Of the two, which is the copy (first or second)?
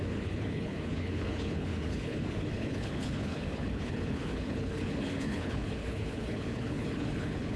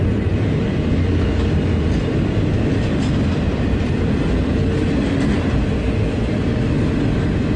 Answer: first